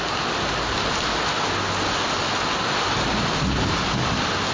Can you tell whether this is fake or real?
real